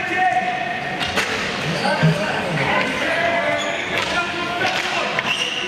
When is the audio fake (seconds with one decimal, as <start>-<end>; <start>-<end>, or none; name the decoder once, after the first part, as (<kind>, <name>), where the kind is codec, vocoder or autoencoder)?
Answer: 1.3-4.7 (codec, DAC)